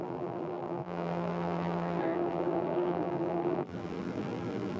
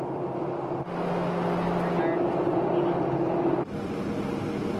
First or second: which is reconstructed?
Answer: first